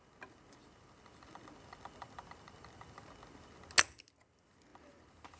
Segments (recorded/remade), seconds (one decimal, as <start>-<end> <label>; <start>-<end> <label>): 0.0-0.6 recorded; 0.6-3.5 remade; 3.5-5.4 recorded